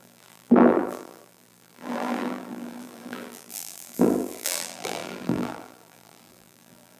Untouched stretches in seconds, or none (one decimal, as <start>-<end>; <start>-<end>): none